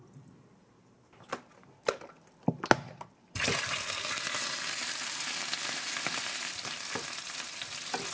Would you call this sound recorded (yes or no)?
yes